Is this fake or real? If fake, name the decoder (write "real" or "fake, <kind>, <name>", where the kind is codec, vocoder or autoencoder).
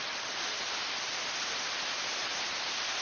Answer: real